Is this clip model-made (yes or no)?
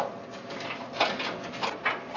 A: no